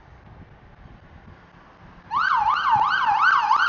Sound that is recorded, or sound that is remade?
recorded